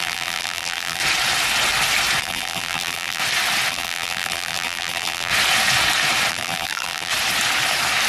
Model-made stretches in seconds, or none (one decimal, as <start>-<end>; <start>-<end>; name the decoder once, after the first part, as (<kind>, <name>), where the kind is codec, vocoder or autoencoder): 0.0-1.0 (vocoder, BigVGAN v2); 2.2-3.2; 3.7-5.3; 6.3-7.1